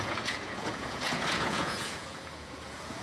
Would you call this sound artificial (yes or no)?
yes